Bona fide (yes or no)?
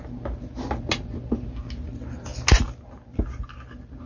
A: yes